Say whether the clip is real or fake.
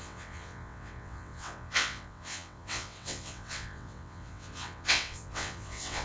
fake